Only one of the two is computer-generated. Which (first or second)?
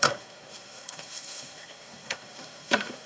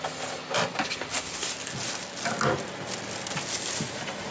first